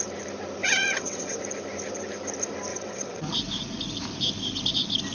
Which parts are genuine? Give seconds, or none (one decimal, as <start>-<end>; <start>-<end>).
0.0-0.6; 1.4-2.7; 3.2-5.1